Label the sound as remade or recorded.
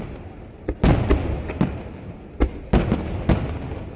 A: recorded